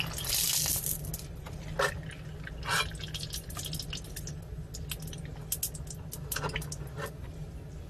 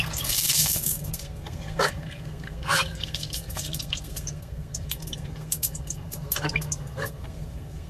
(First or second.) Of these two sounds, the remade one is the second